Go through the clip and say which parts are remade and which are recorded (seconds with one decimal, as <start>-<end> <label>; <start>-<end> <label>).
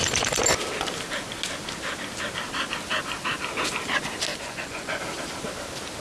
0.0-4.3 recorded; 4.3-5.0 remade; 5.0-6.0 recorded